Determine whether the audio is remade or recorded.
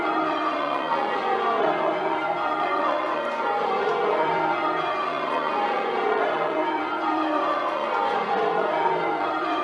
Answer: remade